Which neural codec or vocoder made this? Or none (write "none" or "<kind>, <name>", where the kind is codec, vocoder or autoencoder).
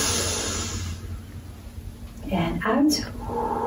none